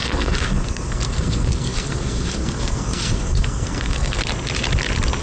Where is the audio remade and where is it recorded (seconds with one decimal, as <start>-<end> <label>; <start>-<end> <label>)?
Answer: 0.0-4.2 remade; 4.2-5.2 recorded